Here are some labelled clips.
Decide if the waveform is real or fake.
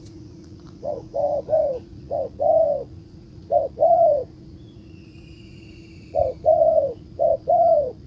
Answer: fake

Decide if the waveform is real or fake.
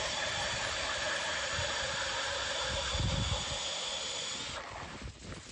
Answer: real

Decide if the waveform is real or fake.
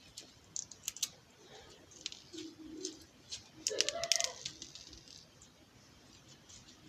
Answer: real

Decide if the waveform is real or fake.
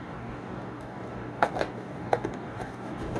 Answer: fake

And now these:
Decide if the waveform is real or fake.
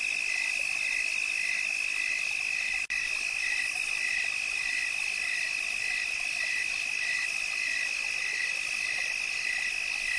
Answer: fake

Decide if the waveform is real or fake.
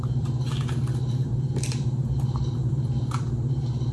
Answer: fake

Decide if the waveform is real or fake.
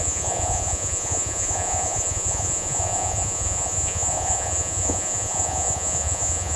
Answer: fake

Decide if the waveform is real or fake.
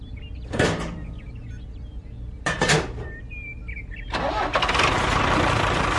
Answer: real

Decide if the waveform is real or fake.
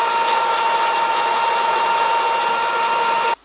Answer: fake